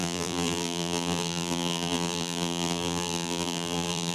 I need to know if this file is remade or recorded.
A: remade